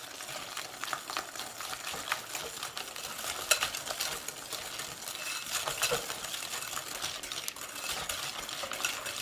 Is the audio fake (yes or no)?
no